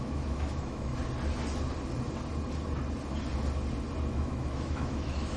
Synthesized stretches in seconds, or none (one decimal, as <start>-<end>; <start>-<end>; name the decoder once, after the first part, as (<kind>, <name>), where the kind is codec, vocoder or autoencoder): 0.0-0.9 (autoencoder, DAC-VAE); 4.1-5.4